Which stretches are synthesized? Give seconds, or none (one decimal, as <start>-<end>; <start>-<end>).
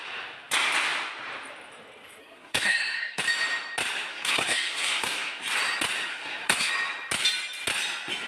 2.2-3.2; 4.1-5.4; 6.1-6.7